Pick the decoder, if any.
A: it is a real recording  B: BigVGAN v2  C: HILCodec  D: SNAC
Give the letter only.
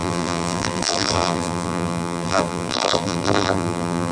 B